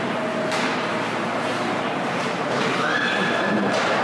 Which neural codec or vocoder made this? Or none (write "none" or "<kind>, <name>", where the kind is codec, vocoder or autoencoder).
vocoder, BigVGAN v2